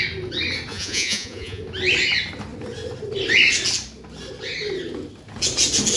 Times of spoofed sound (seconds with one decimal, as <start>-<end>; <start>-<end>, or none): 0.7-1.6